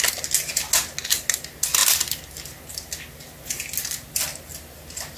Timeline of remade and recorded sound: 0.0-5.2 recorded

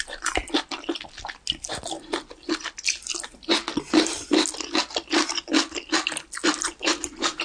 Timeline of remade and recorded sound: 0.0-7.4 recorded

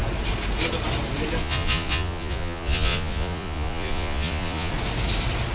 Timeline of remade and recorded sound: 0.0-1.4 recorded; 1.4-4.7 remade; 4.7-5.5 recorded

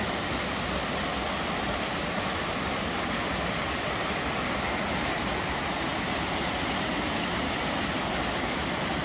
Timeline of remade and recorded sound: 0.0-9.0 recorded

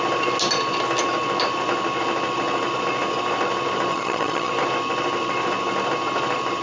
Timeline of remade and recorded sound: 0.0-3.9 recorded; 3.9-4.5 remade; 4.5-6.6 recorded